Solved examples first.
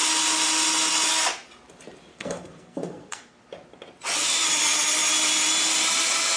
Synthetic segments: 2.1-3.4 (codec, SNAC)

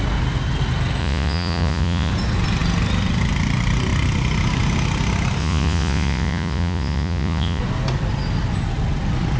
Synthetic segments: 1.0-2.1 (vocoder, Vocos); 5.4-7.6

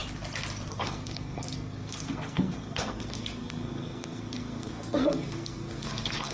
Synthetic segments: 0.7-6.3 (codec, SNAC)

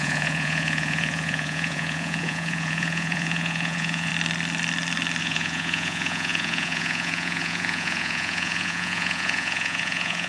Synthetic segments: 0.0-4.1 (vocoder, Vocos); 5.2-10.3